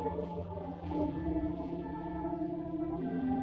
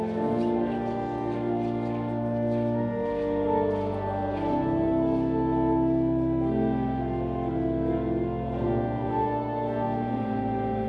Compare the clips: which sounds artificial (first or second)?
first